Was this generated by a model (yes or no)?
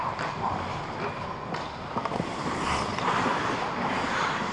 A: no